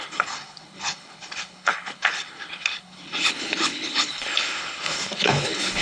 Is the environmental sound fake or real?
fake